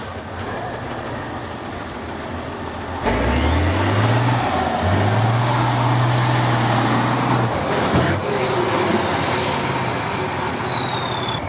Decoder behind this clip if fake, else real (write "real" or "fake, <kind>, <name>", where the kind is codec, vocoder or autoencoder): real